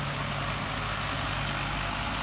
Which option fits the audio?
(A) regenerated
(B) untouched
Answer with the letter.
B